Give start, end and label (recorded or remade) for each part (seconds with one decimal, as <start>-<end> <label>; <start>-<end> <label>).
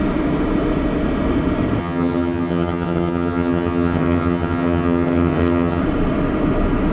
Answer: 0.0-1.8 recorded; 1.8-5.8 remade; 5.8-6.9 recorded